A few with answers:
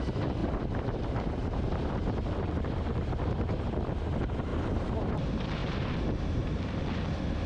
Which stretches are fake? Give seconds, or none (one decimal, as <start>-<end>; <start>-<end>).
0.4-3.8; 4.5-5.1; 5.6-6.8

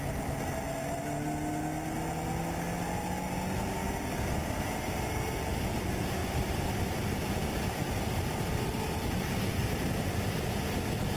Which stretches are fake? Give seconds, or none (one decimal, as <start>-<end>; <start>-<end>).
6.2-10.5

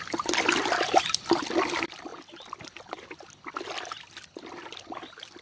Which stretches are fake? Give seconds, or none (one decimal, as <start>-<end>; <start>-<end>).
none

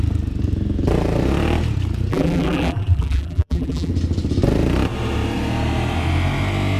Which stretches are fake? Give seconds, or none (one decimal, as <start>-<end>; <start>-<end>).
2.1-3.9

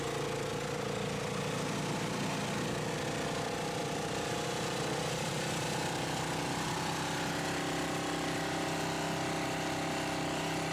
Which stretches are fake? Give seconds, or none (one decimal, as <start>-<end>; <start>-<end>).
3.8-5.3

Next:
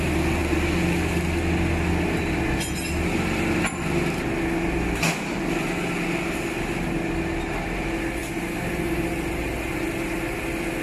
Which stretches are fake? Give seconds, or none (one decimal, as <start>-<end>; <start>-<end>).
none

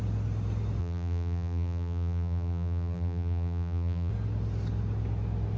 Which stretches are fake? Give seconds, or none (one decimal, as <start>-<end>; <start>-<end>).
0.8-4.1

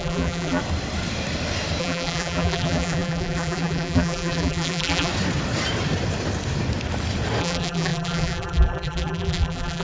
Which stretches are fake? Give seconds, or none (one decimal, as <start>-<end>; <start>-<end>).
0.0-0.6; 1.8-5.1; 7.4-9.8